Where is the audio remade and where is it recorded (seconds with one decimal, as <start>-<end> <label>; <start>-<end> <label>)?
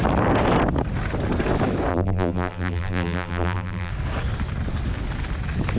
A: 0.0-1.9 recorded; 1.9-3.9 remade; 3.9-5.8 recorded